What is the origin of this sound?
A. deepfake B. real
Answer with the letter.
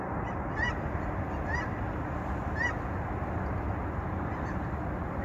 B